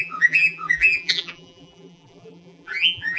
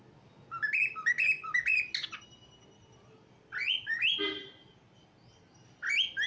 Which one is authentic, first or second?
second